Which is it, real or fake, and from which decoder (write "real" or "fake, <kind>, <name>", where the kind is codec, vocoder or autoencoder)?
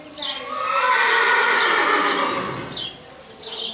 real